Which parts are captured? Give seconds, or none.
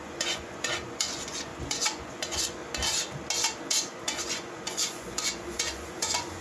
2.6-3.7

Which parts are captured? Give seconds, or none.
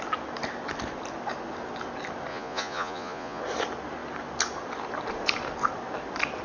0.0-2.3; 3.4-6.4